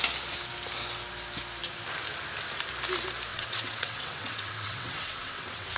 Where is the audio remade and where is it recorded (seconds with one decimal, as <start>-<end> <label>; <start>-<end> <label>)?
0.0-3.3 recorded; 3.3-5.8 remade